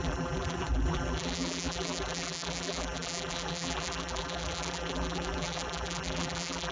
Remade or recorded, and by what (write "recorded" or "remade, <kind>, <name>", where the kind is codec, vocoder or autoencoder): remade, vocoder, BigVGAN v2